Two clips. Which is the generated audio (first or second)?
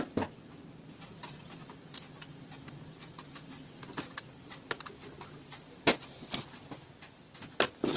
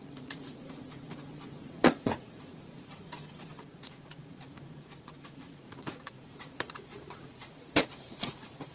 second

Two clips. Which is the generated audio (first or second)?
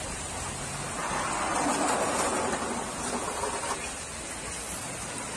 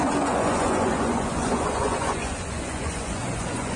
second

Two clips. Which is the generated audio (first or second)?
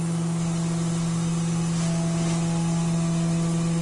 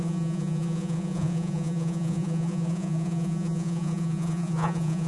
second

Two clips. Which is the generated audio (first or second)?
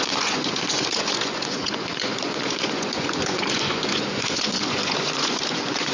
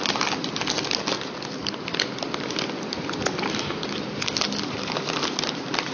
first